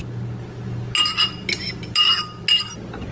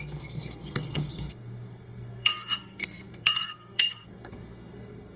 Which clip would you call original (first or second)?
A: first